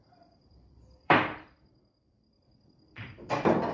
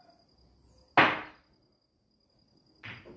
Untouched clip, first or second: second